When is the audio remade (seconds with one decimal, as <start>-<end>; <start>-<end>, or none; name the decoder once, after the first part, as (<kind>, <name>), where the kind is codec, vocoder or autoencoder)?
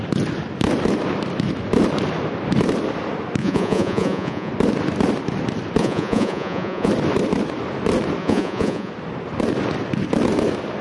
3.4-4.5 (vocoder, Vocos); 5.8-6.9; 8.2-8.9